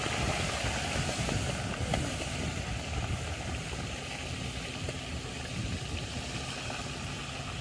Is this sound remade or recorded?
recorded